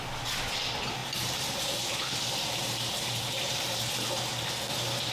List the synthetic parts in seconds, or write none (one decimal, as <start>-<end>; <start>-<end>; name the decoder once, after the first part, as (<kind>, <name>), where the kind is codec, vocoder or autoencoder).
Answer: 1.0-3.9 (vocoder, BigVGAN v2)